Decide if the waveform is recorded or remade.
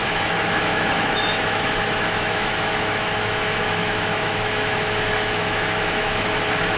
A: remade